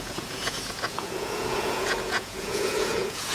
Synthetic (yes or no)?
yes